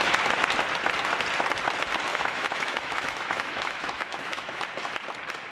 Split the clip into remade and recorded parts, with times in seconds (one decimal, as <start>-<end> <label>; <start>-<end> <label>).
0.0-2.1 recorded; 2.1-4.6 remade; 4.6-5.5 recorded